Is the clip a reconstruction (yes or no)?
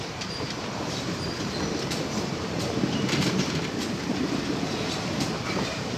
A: yes